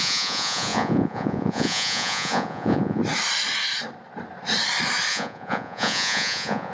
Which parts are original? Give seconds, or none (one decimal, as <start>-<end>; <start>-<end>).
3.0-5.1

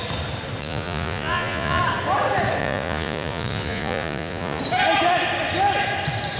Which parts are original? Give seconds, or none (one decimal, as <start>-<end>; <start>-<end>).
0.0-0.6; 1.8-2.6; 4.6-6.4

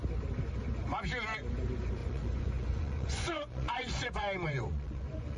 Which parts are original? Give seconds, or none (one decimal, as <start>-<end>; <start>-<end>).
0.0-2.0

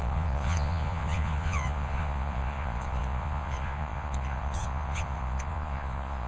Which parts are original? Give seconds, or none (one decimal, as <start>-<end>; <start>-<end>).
none

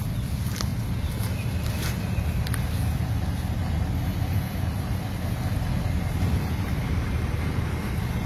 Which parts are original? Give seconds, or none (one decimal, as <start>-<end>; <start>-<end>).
0.0-8.3